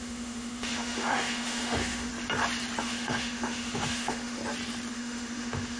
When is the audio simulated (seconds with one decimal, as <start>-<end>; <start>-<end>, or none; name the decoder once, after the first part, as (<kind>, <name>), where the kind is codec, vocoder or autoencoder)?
0.0-2.1 (autoencoder, DAC-VAE); 2.8-4.4; 4.9-5.8